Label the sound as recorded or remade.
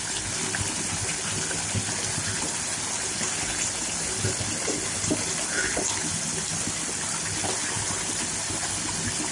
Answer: recorded